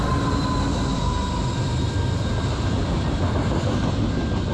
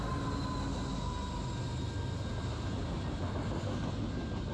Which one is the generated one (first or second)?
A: first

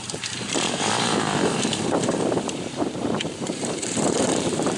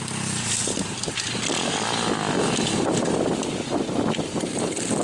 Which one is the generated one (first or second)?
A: first